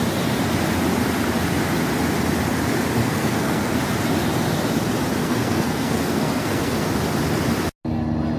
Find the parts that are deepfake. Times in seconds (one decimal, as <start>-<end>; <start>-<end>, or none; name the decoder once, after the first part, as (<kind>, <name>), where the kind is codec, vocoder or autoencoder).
3.0-3.8 (codec, SNAC); 5.2-6.9